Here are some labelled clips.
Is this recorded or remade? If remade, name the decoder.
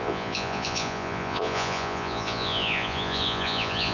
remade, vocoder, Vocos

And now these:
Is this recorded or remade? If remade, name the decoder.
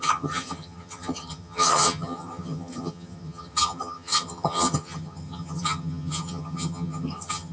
remade, vocoder, HiFi-GAN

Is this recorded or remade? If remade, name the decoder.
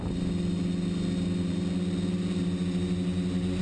recorded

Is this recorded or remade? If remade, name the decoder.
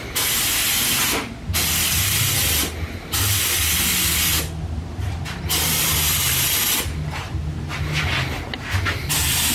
recorded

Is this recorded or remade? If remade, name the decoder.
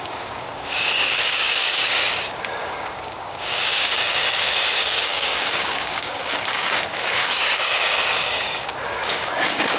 remade, codec, DAC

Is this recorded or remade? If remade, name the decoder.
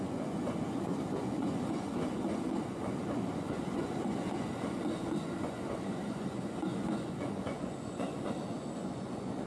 remade, vocoder, Vocos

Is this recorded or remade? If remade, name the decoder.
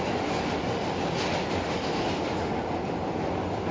recorded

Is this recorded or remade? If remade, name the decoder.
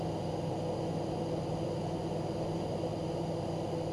recorded